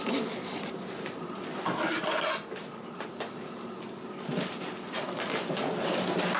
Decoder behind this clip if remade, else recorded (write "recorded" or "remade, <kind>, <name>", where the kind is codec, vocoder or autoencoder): recorded